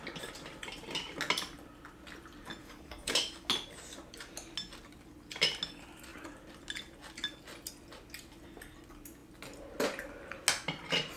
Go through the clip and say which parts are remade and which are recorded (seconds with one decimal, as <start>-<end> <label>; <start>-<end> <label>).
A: 0.0-2.6 recorded; 2.6-3.5 remade; 3.5-11.2 recorded